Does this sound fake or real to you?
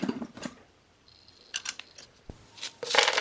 real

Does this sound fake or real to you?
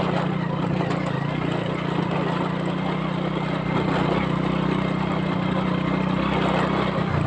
real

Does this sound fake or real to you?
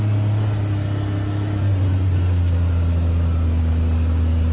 real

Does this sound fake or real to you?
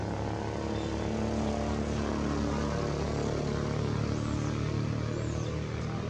real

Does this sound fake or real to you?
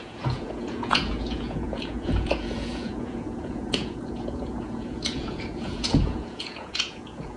fake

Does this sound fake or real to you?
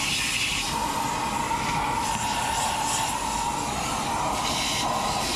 real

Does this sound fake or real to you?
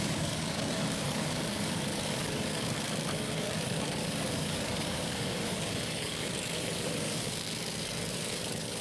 fake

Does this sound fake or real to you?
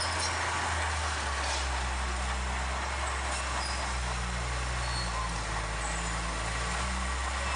real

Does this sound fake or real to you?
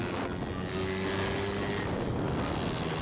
real